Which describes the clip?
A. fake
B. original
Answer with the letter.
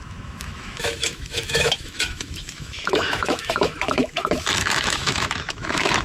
A